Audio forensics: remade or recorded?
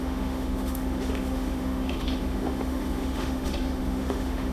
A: remade